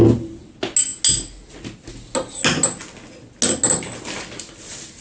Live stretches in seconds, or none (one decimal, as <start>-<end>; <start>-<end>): 0.0-5.0